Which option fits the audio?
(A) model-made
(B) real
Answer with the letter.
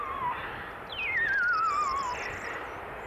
B